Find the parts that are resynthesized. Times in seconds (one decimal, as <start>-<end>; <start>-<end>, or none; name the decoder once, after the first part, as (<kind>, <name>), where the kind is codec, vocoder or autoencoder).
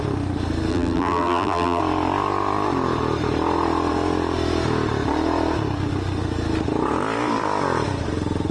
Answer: 0.7-1.8 (vocoder, BigVGAN v2)